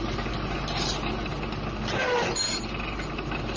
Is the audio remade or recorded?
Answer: recorded